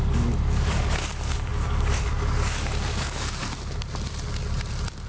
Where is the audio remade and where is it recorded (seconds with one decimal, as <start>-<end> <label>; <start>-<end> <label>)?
0.0-3.4 remade; 3.4-5.1 recorded